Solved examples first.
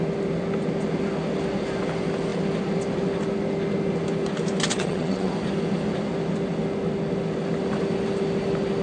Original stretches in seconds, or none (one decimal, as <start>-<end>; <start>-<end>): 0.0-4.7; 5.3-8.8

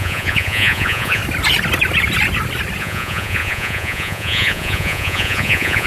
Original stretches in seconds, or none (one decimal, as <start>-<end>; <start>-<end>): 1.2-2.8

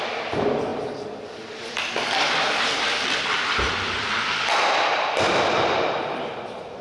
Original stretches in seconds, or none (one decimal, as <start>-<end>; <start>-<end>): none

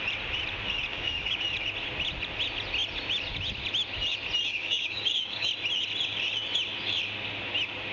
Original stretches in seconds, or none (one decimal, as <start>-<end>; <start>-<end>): 0.0-0.9; 1.4-4.5; 5.5-7.9